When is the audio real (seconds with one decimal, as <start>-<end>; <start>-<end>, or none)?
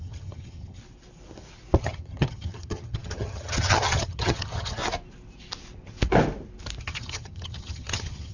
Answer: 0.8-1.8; 4.8-6.8